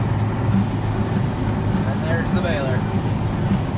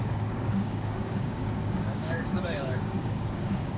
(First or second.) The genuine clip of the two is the first